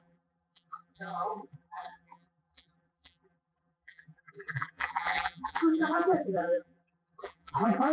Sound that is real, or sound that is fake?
fake